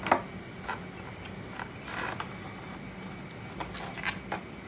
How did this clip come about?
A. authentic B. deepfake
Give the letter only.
A